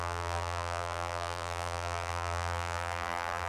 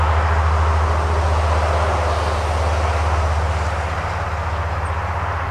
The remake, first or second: first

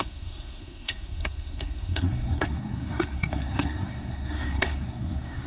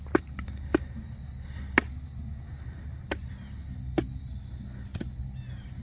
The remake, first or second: first